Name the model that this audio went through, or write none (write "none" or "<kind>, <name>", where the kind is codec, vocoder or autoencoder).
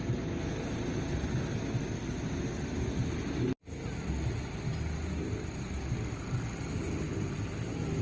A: none